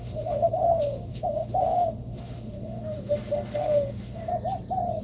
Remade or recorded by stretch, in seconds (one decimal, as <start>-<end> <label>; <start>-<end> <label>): 0.0-4.3 remade; 4.3-5.0 recorded